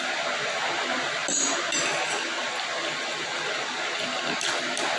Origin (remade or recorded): recorded